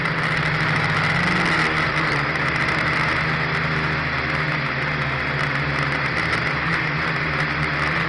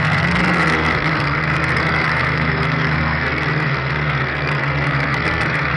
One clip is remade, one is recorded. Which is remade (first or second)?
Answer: second